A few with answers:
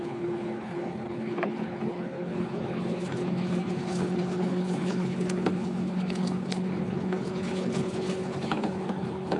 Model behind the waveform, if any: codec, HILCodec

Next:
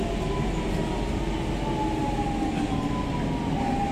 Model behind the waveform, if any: none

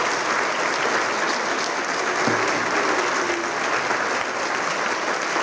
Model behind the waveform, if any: none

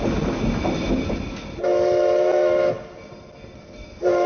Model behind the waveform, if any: none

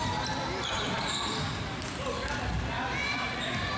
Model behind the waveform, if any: none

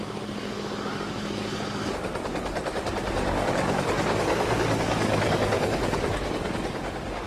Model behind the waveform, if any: codec, DAC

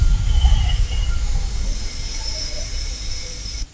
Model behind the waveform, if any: vocoder, BigVGAN v2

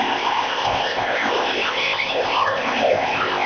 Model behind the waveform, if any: codec, ZipCodec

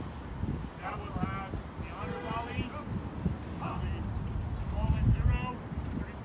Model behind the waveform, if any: none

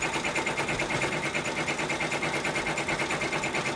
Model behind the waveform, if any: none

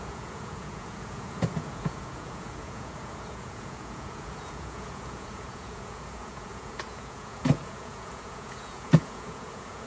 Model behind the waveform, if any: vocoder, Vocos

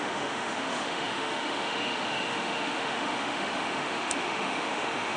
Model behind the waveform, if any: autoencoder, DAC-VAE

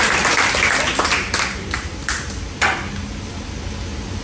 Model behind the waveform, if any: none